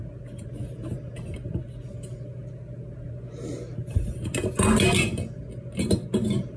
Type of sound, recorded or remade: recorded